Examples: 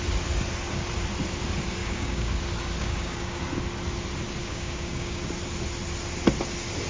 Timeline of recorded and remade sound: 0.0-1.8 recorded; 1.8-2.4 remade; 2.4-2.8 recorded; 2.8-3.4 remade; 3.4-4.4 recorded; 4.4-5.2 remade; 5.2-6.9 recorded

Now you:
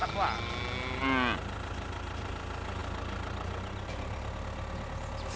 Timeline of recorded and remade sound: 0.0-5.4 recorded

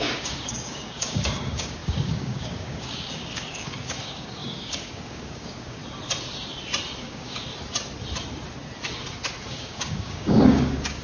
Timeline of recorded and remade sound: 0.0-5.8 remade; 5.8-7.0 recorded; 7.0-7.5 remade; 7.5-9.5 recorded; 9.5-11.0 remade

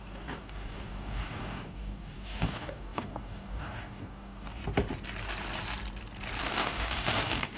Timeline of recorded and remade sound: 0.0-4.6 remade; 4.6-6.4 recorded; 6.4-7.6 remade

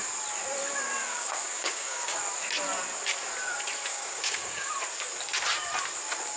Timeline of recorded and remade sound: 0.0-1.1 recorded; 1.1-2.2 remade; 2.2-3.9 recorded; 3.9-4.7 remade; 4.7-6.4 recorded

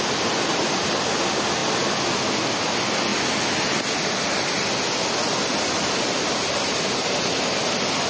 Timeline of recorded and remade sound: 0.0-8.1 recorded